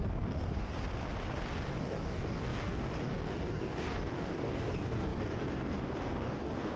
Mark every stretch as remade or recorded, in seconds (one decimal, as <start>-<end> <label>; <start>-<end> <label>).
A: 0.0-0.7 remade; 0.7-1.8 recorded; 1.8-6.8 remade